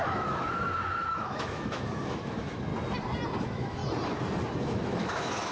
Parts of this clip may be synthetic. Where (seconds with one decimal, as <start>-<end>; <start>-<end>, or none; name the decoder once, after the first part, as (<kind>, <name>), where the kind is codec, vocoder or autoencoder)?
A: 0.0-2.7 (autoencoder, DAC-VAE); 3.4-3.8; 4.6-5.5